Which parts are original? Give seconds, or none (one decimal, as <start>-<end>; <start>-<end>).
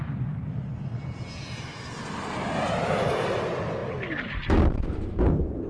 0.0-5.7